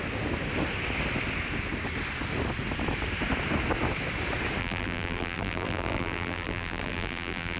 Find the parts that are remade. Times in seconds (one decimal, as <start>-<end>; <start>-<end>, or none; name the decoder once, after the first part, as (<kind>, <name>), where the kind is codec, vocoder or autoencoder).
4.6-7.6 (vocoder, BigVGAN v2)